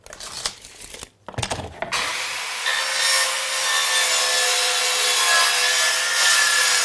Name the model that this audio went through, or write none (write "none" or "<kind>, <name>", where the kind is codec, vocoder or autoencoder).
none